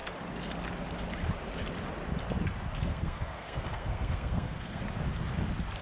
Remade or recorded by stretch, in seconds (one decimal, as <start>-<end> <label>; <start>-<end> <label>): 0.0-2.9 recorded; 2.9-4.8 remade; 4.8-5.8 recorded